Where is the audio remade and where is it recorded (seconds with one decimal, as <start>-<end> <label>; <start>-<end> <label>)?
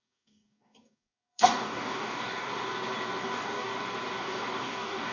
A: 0.0-2.5 remade; 2.5-3.2 recorded; 3.2-3.7 remade; 3.7-4.2 recorded; 4.2-5.1 remade